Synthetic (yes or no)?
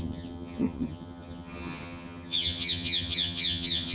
yes